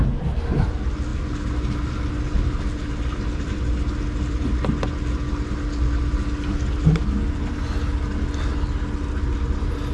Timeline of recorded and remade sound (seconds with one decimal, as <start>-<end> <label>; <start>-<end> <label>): 0.0-9.9 recorded